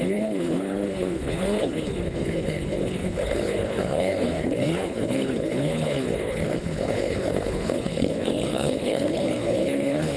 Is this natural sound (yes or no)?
no